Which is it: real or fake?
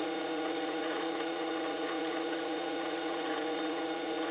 fake